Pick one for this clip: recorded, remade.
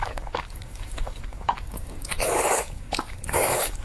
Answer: remade